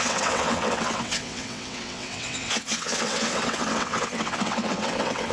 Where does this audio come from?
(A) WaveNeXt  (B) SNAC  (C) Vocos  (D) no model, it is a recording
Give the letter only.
A